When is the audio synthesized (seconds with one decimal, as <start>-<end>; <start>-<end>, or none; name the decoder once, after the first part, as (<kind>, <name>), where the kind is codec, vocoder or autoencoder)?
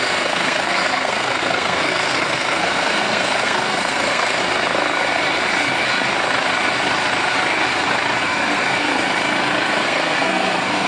0.0-4.4 (codec, SNAC); 8.2-8.9; 9.8-10.9